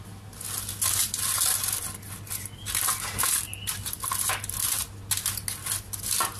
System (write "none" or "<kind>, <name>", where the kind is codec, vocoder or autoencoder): none